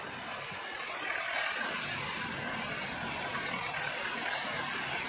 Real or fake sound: real